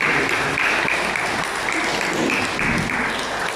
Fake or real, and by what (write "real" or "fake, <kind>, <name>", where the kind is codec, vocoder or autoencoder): real